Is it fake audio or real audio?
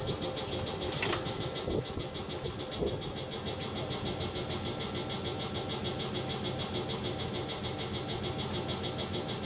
real